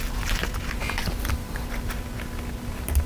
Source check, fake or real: real